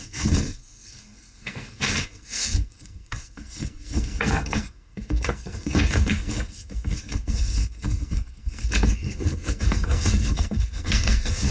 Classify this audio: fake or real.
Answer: fake